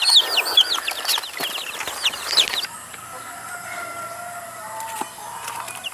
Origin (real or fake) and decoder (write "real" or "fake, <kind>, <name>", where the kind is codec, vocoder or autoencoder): real